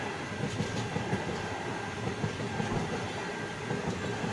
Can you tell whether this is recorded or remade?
remade